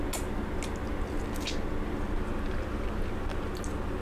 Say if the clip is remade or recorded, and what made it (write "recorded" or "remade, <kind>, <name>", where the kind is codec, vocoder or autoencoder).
recorded